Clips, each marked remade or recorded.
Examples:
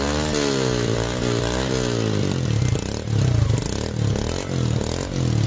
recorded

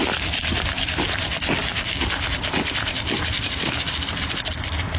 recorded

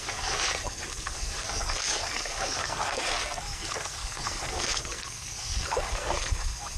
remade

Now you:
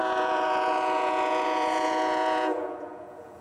remade